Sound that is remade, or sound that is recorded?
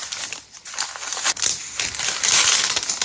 recorded